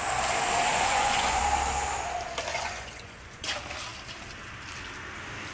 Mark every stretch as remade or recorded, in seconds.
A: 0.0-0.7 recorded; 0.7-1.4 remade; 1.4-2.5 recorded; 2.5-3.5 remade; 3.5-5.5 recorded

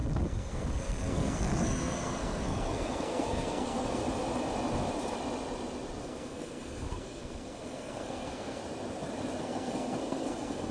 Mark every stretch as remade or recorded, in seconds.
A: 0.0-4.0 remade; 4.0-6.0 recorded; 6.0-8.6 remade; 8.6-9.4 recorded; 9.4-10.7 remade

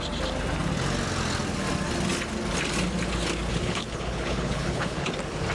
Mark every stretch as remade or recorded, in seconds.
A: 0.0-3.5 recorded; 3.5-5.1 remade; 5.1-5.5 recorded

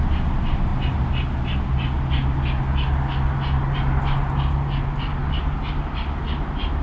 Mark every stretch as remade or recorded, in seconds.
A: 0.0-6.8 recorded

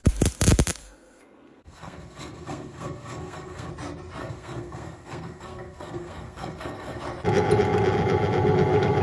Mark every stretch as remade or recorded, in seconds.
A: 0.0-0.8 recorded; 0.8-3.7 remade; 3.7-4.2 recorded; 4.2-7.0 remade; 7.0-9.0 recorded

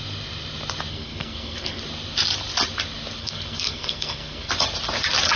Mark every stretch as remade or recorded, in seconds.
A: 0.0-0.9 recorded; 0.9-1.8 remade; 1.8-3.2 recorded; 3.2-4.5 remade; 4.5-5.4 recorded